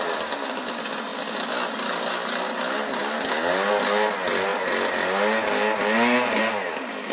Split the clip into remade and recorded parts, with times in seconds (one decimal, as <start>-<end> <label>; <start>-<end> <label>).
0.0-7.1 recorded